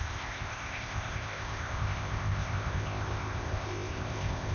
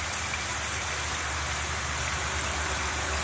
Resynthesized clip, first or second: first